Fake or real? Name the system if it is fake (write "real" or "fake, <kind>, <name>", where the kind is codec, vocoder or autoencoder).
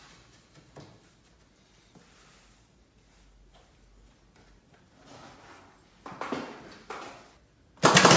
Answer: real